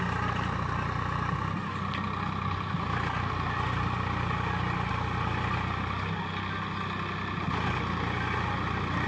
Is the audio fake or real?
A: real